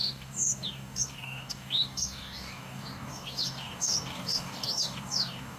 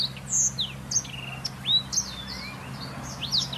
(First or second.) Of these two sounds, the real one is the second